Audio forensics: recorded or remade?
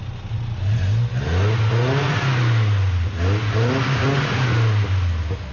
recorded